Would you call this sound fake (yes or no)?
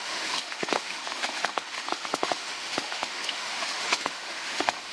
yes